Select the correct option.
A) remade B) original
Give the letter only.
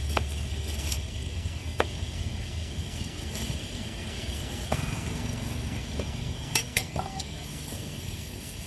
A